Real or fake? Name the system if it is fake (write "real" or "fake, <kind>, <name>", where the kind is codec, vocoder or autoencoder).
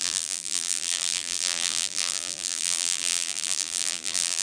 fake, vocoder, BigVGAN v2